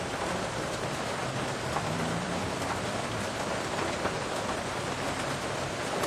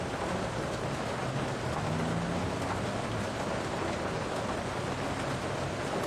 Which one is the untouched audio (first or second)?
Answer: second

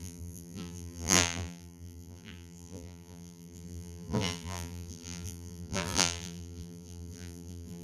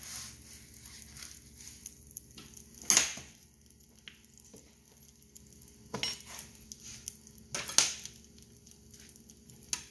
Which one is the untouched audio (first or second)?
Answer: second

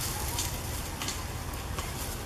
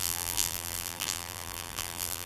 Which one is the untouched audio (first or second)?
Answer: first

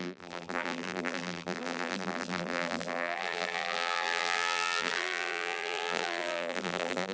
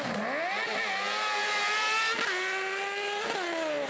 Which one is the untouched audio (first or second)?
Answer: second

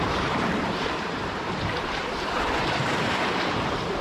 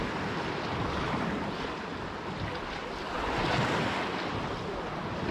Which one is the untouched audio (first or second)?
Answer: second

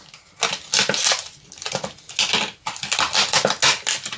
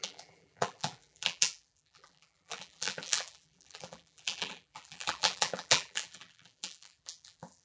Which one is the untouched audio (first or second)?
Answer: first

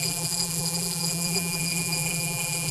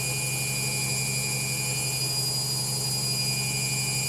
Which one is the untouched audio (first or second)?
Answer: second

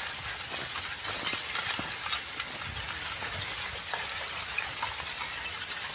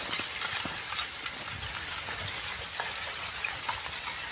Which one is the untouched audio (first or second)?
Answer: first